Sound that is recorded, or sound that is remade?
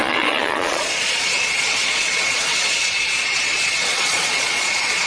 remade